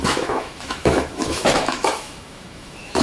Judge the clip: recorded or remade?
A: remade